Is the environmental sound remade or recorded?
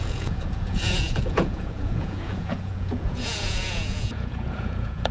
remade